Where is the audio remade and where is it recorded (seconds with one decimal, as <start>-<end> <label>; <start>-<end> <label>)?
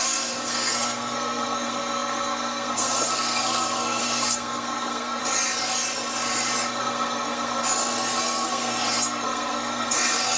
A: 0.0-5.2 remade; 5.2-6.8 recorded; 6.8-7.6 remade; 7.6-8.2 recorded; 8.2-10.4 remade